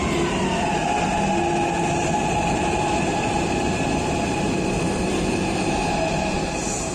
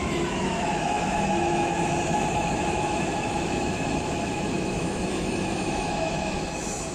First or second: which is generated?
second